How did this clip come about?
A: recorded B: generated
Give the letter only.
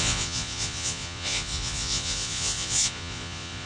B